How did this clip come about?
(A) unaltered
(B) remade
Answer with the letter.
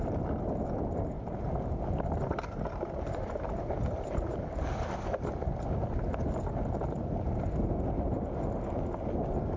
A